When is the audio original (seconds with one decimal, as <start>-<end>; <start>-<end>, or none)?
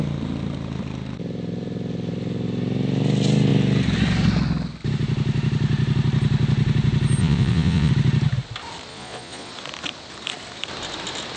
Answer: 0.0-7.2; 7.9-8.9; 9.5-11.4